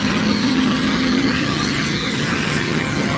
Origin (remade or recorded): remade